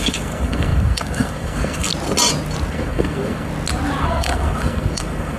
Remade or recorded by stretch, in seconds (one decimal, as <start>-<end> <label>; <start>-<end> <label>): 0.0-1.9 remade; 1.9-2.7 recorded; 2.7-3.5 remade; 3.5-4.0 recorded; 4.0-5.4 remade